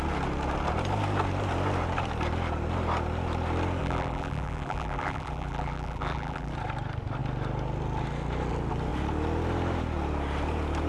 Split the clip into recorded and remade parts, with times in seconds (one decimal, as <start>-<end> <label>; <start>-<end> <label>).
0.0-3.8 recorded; 3.8-6.5 remade; 6.5-10.9 recorded